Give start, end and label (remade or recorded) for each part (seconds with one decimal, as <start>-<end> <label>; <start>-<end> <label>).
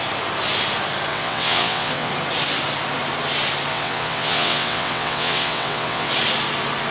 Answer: 0.0-1.1 recorded; 1.1-2.1 remade; 2.1-3.7 recorded; 3.7-6.1 remade; 6.1-6.9 recorded